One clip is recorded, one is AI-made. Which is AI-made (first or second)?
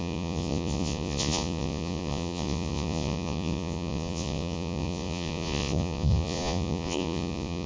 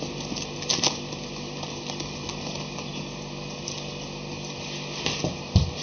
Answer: first